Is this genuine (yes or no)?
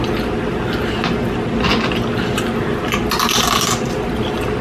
yes